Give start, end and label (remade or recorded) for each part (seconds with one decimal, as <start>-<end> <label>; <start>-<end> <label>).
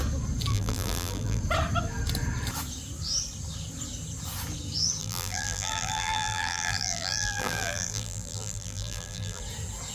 0.0-0.5 recorded; 0.5-1.4 remade; 1.4-5.0 recorded; 5.0-9.4 remade; 9.4-9.9 recorded